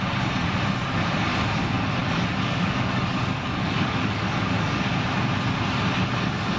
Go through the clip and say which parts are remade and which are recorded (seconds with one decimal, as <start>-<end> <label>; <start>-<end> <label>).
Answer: 0.0-2.0 recorded; 2.0-4.9 remade; 4.9-6.6 recorded